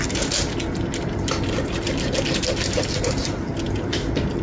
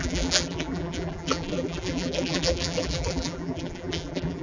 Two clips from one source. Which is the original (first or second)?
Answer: first